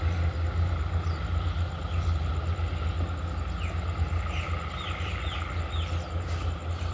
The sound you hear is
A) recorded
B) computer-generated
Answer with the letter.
A